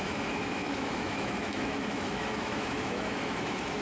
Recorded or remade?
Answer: remade